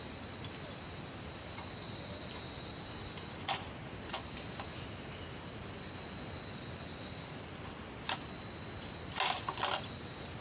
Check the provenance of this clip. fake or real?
real